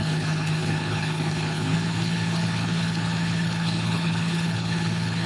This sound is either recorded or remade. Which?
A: remade